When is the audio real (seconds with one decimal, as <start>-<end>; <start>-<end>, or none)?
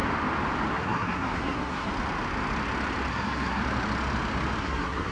0.0-0.7; 1.9-3.1; 3.6-4.6